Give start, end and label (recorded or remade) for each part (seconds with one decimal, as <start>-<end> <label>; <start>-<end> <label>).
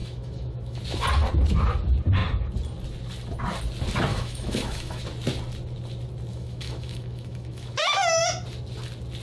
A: 0.0-0.8 remade; 0.8-4.1 recorded; 4.1-5.0 remade; 5.0-6.3 recorded; 6.3-8.2 remade; 8.2-9.2 recorded